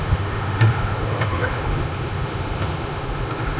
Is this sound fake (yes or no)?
yes